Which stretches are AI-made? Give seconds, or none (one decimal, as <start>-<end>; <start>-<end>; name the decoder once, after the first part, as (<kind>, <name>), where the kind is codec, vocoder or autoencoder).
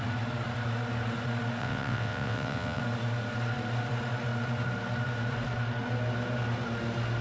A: 1.6-2.8 (vocoder, WaveNeXt)